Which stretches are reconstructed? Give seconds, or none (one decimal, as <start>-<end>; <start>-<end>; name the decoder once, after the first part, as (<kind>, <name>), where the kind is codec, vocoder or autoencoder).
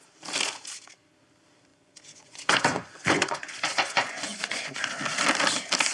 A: 1.7-4.9 (vocoder, Vocos)